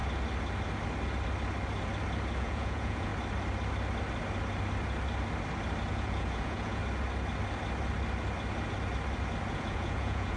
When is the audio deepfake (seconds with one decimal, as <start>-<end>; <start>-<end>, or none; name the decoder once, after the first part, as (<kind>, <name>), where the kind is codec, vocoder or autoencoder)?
2.4-3.1 (vocoder, Vocos); 5.9-6.8; 9.5-10.4